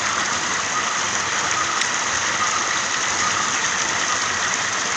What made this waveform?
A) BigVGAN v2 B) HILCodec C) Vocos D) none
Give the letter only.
D